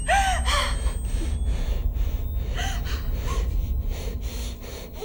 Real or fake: real